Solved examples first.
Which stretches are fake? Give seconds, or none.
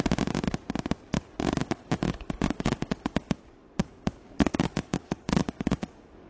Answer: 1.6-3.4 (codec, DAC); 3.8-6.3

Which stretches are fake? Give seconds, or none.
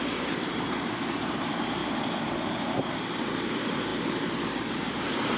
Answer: 0.0-1.8 (vocoder, BigVGAN v2); 2.6-5.4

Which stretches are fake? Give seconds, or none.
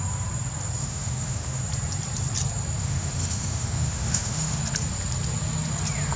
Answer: 0.8-1.6 (autoencoder, DAC-VAE); 2.8-4.6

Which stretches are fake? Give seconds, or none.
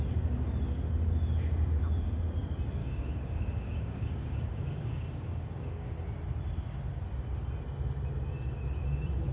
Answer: 2.8-5.9 (codec, DAC)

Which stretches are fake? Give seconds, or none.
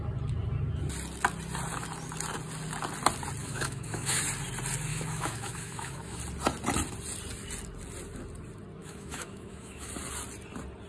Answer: 3.4-4.2 (autoencoder, DAC-VAE); 4.9-6.2; 8.8-9.9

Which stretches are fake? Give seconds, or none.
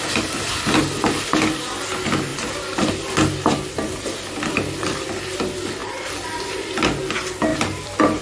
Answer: 7.5-8.2 (vocoder, BigVGAN v2)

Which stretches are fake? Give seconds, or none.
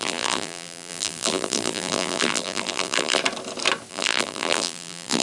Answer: 0.0-3.2 (vocoder, BigVGAN v2); 3.9-5.2